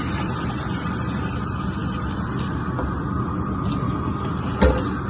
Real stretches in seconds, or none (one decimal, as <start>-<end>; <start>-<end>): 0.0-5.1